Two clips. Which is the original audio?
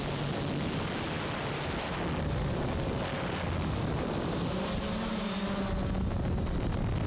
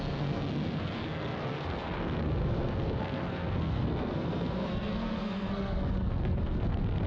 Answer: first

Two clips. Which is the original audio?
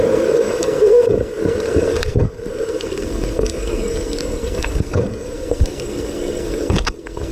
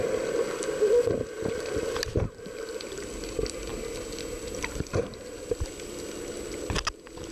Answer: second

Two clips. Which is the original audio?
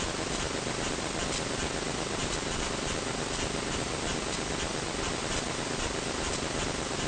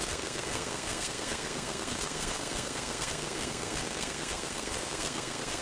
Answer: first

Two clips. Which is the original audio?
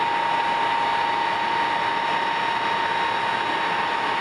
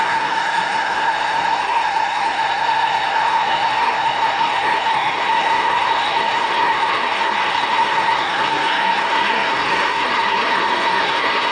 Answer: first